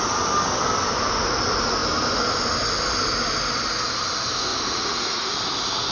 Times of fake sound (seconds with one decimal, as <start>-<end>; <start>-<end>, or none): 4.5-5.3